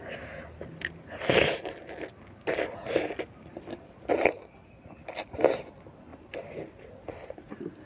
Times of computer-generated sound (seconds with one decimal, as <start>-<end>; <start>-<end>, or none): 6.1-7.5